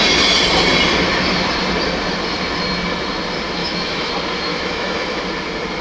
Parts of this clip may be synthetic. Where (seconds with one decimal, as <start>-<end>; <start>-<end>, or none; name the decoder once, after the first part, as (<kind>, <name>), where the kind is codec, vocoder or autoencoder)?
3.6-4.1 (autoencoder, DAC-VAE); 4.5-5.2